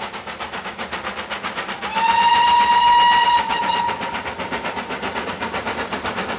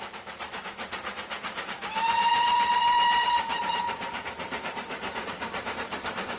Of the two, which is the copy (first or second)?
second